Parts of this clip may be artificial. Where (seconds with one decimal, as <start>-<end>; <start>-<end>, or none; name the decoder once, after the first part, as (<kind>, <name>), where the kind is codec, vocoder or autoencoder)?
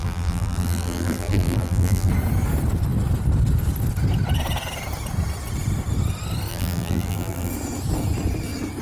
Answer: 0.0-2.1 (vocoder, BigVGAN v2); 6.5-7.5